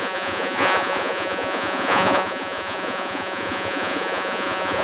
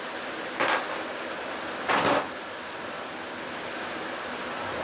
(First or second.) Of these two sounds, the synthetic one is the first